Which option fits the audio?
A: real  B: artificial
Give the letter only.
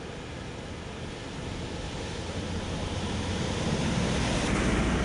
A